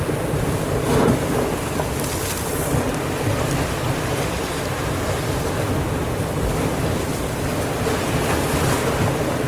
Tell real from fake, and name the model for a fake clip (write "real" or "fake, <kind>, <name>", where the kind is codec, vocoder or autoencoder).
real